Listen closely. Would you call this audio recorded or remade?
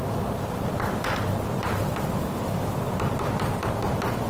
recorded